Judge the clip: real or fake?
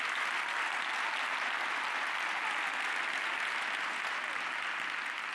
real